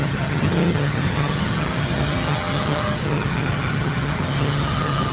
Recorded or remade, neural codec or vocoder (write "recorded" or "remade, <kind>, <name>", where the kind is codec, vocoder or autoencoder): remade, vocoder, HiFi-GAN